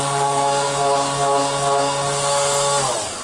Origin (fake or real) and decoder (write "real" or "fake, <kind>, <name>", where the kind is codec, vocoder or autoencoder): real